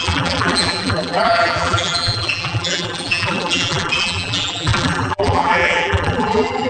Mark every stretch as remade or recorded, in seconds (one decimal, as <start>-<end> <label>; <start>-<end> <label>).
0.0-6.7 remade

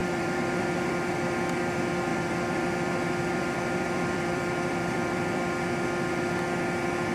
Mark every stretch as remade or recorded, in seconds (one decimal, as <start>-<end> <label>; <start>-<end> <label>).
0.0-1.1 remade; 1.1-2.1 recorded; 2.1-5.4 remade; 5.4-7.1 recorded